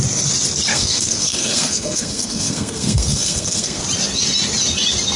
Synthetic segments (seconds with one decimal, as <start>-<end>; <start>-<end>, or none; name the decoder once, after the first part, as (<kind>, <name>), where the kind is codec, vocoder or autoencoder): 0.7-3.8 (codec, SNAC)